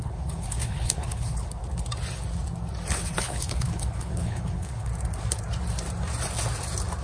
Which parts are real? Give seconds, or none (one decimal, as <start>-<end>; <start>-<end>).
1.6-2.9; 4.9-7.0